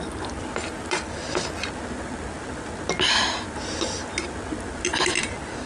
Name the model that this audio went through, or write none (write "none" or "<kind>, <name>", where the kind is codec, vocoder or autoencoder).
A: none